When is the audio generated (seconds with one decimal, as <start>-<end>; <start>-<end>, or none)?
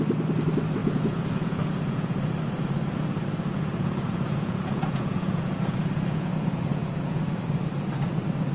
0.8-2.2; 3.8-6.3; 6.7-7.4